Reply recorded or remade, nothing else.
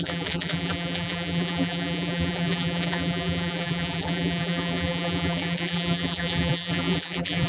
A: remade